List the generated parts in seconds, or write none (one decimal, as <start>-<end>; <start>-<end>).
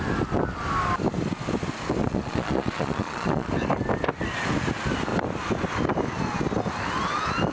2.0-3.5